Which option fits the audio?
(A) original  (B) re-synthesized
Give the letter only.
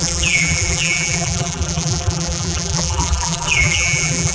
B